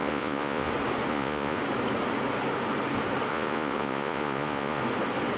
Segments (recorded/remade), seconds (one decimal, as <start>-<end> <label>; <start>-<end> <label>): 0.0-0.7 remade; 0.7-1.1 recorded; 1.1-1.6 remade; 1.6-3.3 recorded; 3.3-4.8 remade; 4.8-5.4 recorded